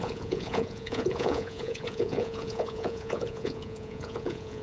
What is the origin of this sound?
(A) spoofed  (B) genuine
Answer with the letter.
A